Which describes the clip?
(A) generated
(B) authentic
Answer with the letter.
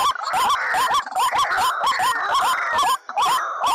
B